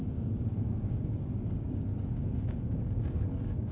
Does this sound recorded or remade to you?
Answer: remade